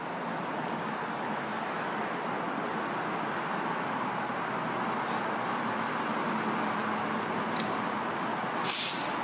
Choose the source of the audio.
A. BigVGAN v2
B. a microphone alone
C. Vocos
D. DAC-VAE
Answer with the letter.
B